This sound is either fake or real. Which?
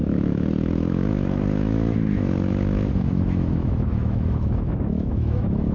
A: fake